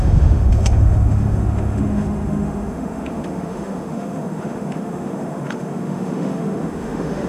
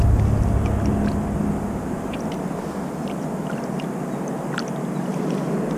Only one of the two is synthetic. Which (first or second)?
first